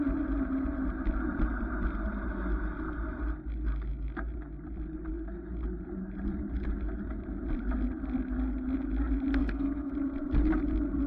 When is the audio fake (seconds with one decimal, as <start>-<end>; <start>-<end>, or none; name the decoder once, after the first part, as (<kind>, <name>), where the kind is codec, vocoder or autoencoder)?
9.4-9.9 (codec, SNAC)